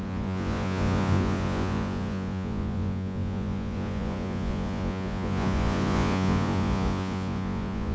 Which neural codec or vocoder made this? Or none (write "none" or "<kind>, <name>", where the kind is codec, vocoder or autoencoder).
vocoder, Vocos